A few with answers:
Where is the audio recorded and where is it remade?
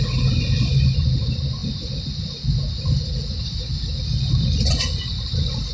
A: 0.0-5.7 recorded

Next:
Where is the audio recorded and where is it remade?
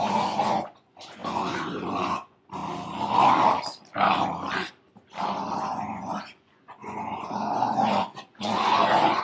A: 0.0-2.6 remade; 2.6-5.6 recorded; 5.6-9.2 remade